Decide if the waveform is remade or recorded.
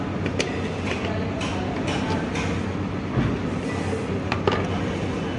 recorded